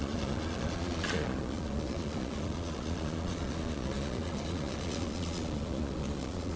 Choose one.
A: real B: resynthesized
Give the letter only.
B